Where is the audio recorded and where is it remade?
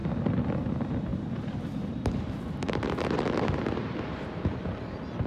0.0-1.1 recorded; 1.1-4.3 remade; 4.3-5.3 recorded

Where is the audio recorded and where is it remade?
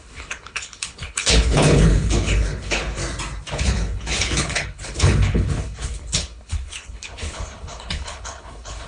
0.0-3.0 remade; 3.0-3.5 recorded; 3.5-8.9 remade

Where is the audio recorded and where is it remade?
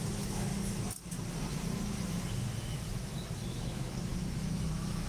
0.0-0.5 remade; 0.5-2.0 recorded; 2.0-5.1 remade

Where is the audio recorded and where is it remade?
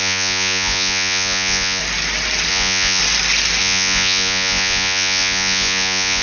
0.0-1.8 remade; 1.8-2.5 recorded; 2.5-3.0 remade; 3.0-3.6 recorded; 3.6-6.2 remade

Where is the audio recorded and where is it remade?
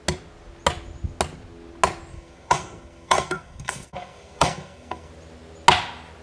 0.0-2.1 recorded; 2.1-5.1 remade; 5.1-6.2 recorded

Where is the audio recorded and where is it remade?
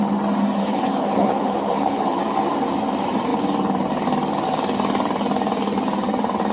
0.0-0.6 recorded; 0.6-2.2 remade; 2.2-6.5 recorded